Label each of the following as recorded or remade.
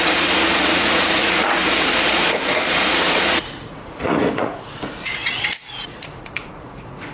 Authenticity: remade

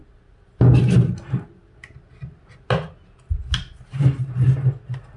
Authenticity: recorded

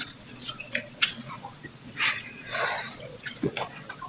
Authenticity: remade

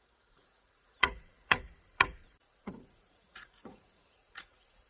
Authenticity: remade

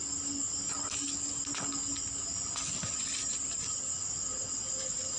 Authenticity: recorded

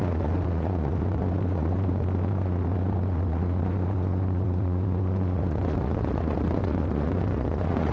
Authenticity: remade